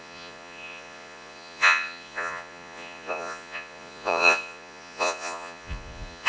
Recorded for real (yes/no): no